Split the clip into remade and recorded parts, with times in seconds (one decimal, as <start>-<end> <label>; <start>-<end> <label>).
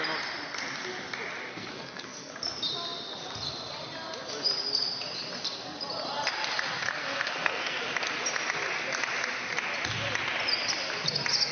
0.0-1.5 recorded; 1.5-2.3 remade; 2.3-7.0 recorded; 7.0-7.8 remade; 7.8-11.5 recorded